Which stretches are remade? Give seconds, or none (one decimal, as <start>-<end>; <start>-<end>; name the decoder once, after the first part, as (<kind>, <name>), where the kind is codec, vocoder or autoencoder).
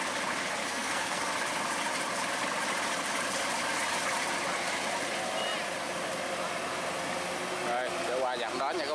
0.6-1.3 (codec, SNAC)